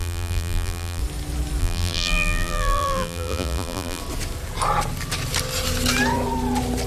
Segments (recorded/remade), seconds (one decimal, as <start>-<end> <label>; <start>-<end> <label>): 0.0-1.0 remade; 1.0-1.6 recorded; 1.6-4.0 remade; 4.0-6.9 recorded